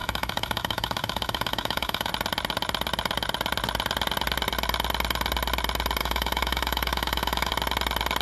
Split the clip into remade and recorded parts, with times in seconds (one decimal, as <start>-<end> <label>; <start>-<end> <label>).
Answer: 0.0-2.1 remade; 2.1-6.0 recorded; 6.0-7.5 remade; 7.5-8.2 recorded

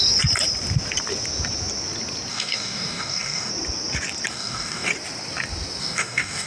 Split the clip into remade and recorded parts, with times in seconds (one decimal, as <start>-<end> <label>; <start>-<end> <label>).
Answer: 0.0-2.3 recorded; 2.3-3.5 remade; 3.5-4.3 recorded; 4.3-4.9 remade; 4.9-5.8 recorded; 5.8-6.5 remade

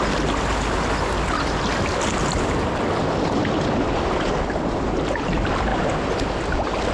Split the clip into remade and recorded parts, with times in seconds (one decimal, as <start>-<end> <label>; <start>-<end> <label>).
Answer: 0.0-6.9 recorded